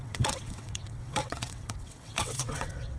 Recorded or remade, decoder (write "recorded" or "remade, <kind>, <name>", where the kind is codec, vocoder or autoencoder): remade, vocoder, WaveNeXt